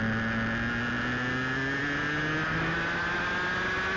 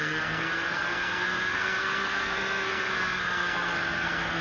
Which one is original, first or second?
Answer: first